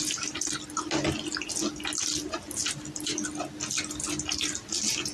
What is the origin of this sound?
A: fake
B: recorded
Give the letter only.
B